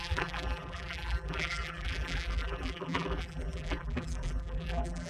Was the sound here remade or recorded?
remade